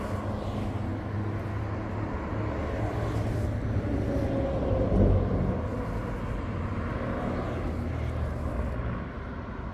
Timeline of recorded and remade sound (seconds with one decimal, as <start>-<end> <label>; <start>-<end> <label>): 0.0-9.7 recorded